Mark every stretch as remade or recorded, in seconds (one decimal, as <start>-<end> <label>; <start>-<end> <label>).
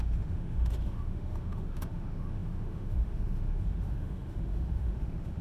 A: 0.0-5.4 remade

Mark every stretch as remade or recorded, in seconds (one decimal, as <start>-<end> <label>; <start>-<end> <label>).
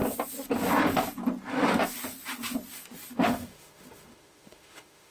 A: 0.0-3.1 recorded; 3.1-5.1 remade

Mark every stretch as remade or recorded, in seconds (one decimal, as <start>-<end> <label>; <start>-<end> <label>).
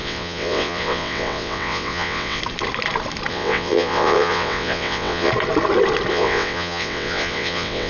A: 0.0-2.4 remade; 2.4-3.3 recorded; 3.3-5.3 remade; 5.3-6.1 recorded; 6.1-7.9 remade